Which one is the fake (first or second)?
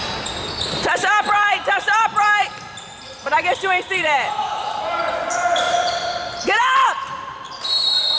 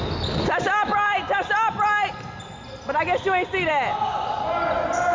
first